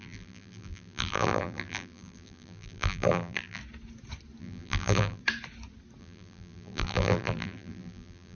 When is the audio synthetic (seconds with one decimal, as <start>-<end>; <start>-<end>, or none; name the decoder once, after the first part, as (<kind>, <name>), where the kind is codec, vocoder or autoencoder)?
0.0-3.6 (vocoder, BigVGAN v2); 4.4-5.2; 6.0-8.3